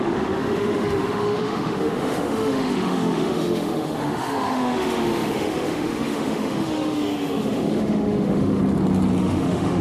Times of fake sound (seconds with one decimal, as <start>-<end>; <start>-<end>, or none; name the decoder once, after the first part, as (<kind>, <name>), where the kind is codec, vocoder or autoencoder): 0.0-8.6 (autoencoder, DAC-VAE); 9.2-9.8